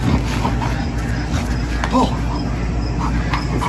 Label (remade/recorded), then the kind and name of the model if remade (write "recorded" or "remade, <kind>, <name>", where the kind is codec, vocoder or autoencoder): recorded